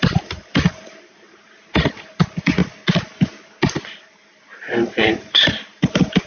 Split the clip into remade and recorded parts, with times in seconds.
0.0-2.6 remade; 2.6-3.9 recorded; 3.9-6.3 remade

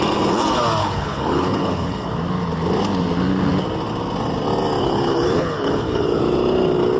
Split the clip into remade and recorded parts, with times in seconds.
0.0-0.8 recorded; 0.8-2.1 remade; 2.1-4.8 recorded; 4.8-6.2 remade; 6.2-7.0 recorded